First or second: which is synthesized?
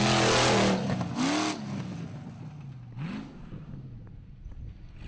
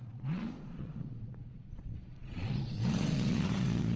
second